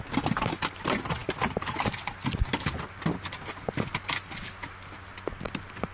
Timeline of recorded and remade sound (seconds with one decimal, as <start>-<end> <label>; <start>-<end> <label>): 0.0-5.9 recorded